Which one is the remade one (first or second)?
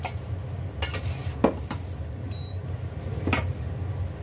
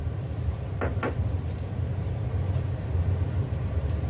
second